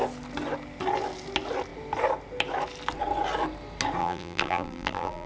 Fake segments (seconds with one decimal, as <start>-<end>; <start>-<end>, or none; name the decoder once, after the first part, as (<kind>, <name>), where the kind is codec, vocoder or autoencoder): 4.0-5.3 (vocoder, BigVGAN v2)